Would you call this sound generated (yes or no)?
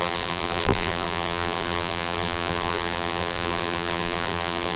yes